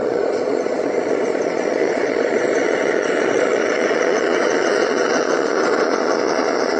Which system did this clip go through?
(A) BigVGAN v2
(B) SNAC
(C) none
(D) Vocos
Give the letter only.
D